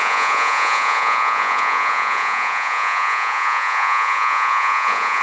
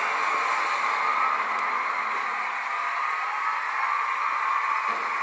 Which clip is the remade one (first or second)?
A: first